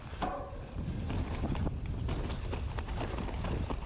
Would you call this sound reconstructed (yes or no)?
no